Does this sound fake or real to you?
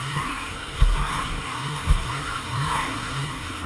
fake